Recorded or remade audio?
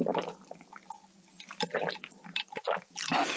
recorded